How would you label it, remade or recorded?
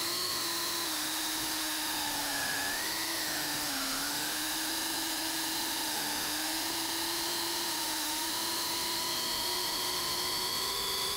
remade